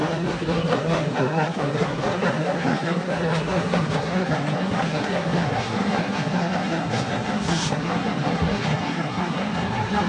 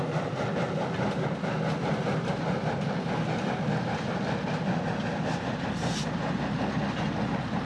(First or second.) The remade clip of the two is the first